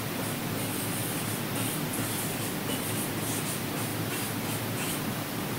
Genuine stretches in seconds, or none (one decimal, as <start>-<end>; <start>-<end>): 0.0-5.6